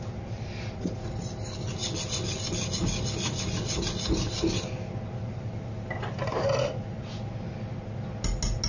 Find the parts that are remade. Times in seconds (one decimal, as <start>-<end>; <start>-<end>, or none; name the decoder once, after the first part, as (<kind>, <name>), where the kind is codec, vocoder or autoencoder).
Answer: none